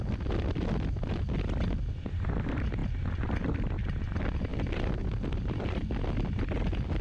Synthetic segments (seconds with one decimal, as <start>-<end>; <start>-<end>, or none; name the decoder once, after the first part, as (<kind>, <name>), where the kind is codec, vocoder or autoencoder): none